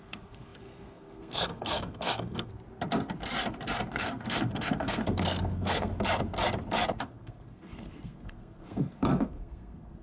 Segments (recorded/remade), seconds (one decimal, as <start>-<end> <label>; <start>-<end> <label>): 0.0-2.5 remade; 2.5-3.9 recorded; 3.9-5.9 remade; 5.9-7.0 recorded; 7.0-10.0 remade